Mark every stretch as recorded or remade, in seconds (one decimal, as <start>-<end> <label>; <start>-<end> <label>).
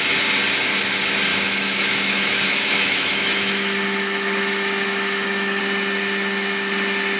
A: 0.0-1.3 recorded; 1.3-5.6 remade; 5.6-7.2 recorded